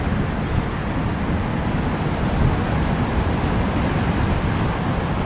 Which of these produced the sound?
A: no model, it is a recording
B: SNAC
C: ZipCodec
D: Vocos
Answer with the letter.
A